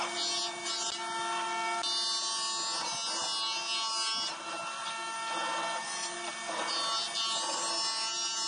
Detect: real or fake real